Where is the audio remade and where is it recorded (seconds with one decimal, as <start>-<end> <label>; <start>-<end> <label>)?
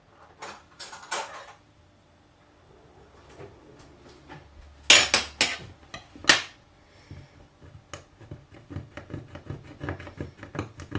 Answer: 0.0-11.0 recorded